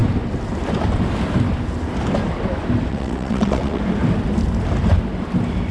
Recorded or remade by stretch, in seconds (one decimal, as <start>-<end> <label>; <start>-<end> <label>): 0.0-2.9 recorded; 2.9-3.8 remade; 3.8-5.7 recorded